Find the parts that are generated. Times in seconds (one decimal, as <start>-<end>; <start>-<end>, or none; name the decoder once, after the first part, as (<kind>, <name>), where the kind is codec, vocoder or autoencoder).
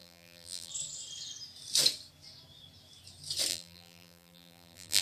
0.0-0.7 (vocoder, BigVGAN v2); 3.5-5.0